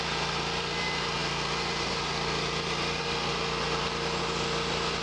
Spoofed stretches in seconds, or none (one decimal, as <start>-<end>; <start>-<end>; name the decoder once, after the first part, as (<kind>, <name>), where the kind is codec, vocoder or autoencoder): none